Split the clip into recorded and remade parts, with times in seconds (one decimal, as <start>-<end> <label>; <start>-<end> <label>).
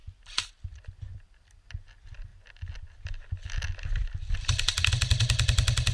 0.0-5.9 recorded